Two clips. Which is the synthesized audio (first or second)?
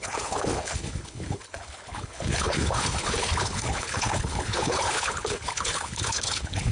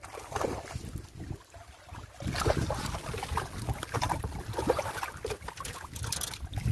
first